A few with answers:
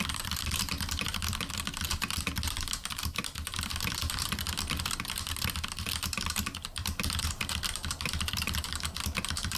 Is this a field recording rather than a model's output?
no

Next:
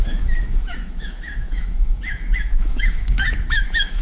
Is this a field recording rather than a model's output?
no